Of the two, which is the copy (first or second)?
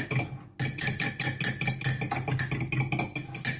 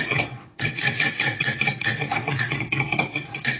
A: second